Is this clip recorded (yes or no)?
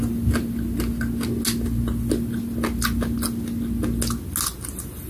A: yes